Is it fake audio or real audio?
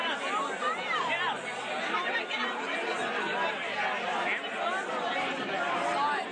real